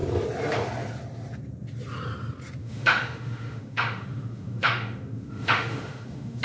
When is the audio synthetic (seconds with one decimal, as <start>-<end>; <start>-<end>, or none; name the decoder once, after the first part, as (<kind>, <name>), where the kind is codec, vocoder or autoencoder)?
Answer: 2.6-6.4 (autoencoder, DAC-VAE)